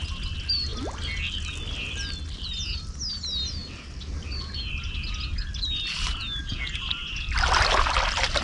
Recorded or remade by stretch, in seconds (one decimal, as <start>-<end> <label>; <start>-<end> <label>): 0.0-8.4 recorded